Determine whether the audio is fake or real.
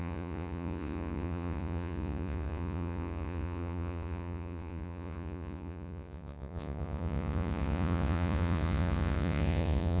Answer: fake